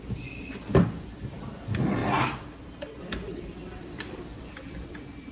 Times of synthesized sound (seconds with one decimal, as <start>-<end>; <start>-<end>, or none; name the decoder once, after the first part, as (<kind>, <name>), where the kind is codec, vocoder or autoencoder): 0.0-2.0 (vocoder, BigVGAN v2); 3.0-5.3